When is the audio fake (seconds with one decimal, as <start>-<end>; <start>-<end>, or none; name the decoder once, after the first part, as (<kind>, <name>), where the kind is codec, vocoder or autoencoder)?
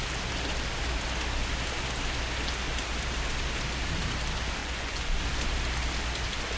4.6-5.2 (vocoder, Vocos)